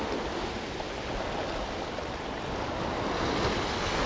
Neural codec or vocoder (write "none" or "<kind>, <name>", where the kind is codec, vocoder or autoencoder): none